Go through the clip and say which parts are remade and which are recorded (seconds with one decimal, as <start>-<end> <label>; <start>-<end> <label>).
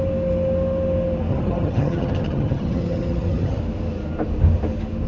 0.0-1.3 recorded; 1.3-3.6 remade; 3.6-5.1 recorded